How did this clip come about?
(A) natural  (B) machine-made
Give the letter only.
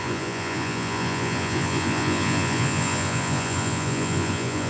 B